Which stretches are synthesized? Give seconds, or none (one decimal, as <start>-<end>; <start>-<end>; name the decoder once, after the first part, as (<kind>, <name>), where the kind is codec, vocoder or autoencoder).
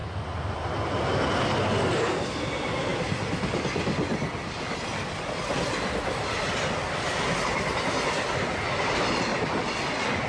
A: none